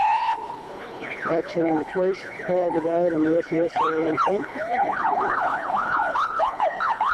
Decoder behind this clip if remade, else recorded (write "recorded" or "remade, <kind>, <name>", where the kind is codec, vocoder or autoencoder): remade, codec, HILCodec